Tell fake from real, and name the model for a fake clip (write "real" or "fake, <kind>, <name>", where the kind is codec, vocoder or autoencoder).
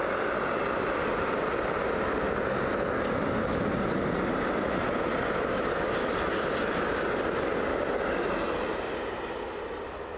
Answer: real